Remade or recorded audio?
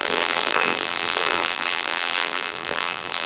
remade